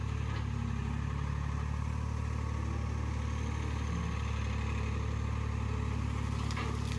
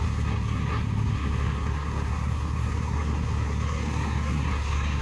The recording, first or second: first